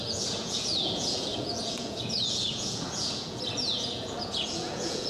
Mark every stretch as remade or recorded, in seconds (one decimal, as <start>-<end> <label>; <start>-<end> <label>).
0.0-5.1 remade